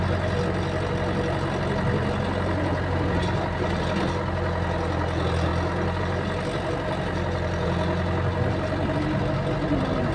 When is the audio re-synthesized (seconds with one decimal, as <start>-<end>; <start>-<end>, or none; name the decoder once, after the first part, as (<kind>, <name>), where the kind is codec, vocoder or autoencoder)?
none